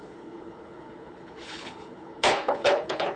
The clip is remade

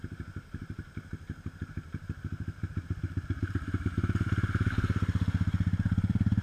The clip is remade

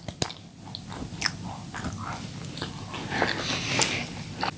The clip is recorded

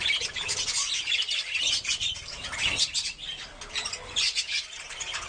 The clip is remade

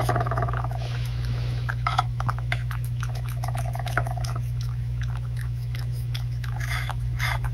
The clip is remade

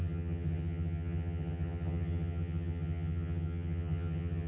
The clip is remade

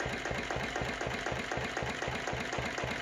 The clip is recorded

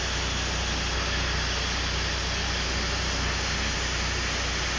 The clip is recorded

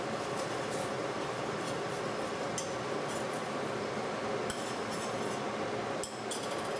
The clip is recorded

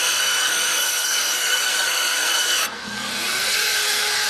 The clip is remade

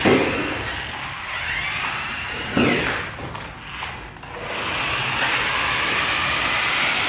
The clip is recorded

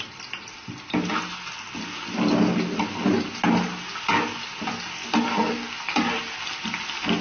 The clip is recorded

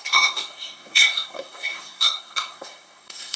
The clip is remade